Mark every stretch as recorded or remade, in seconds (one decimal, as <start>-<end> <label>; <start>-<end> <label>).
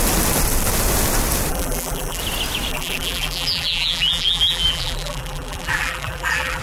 0.0-1.5 recorded; 1.5-2.2 remade; 2.2-2.7 recorded; 2.7-6.6 remade